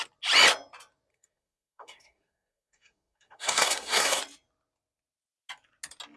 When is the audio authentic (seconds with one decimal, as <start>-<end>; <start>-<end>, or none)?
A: 0.0-1.1; 4.2-6.2